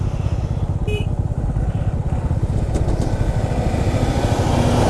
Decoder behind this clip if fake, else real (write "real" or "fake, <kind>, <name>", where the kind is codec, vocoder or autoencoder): real